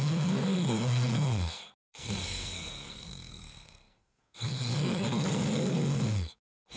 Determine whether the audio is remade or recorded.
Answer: remade